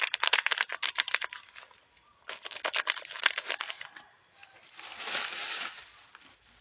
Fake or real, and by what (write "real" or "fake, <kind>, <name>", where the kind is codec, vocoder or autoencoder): real